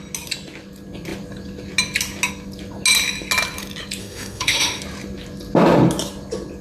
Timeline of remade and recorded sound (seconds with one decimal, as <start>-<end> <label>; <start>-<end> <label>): 0.0-4.0 recorded; 4.0-4.8 remade; 4.8-6.6 recorded